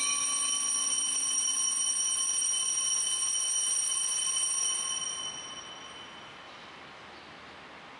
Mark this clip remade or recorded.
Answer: recorded